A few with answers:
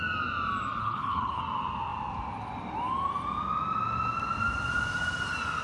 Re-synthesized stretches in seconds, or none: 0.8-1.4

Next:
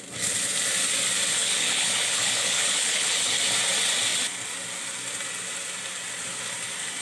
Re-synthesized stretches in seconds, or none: 1.3-3.4

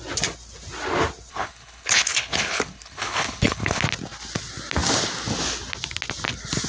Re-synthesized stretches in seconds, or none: 1.3-3.8

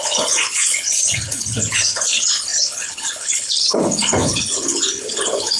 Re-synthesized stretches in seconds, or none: 0.0-5.6

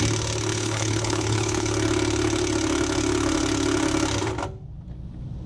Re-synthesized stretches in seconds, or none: 0.5-1.7